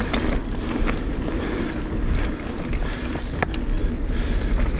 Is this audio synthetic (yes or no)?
no